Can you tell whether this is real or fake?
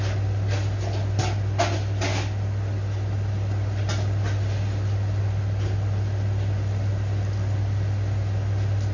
real